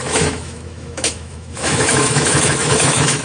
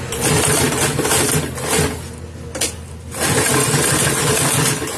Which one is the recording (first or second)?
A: second